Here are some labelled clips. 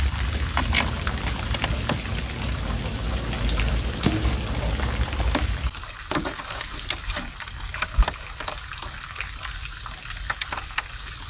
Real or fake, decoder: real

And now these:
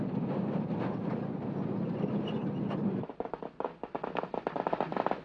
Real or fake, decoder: real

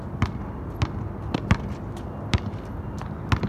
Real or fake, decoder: real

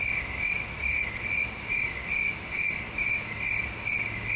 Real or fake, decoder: real